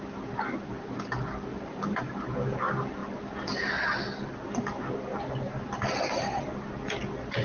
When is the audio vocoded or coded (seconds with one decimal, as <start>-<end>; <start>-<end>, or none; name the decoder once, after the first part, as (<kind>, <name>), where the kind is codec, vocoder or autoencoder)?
1.5-2.2 (vocoder, BigVGAN v2)